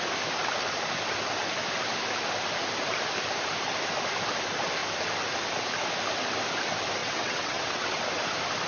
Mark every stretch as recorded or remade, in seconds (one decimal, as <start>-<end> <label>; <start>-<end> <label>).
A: 0.0-7.0 recorded; 7.0-8.0 remade; 8.0-8.7 recorded